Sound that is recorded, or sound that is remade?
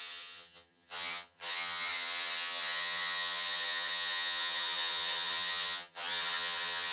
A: remade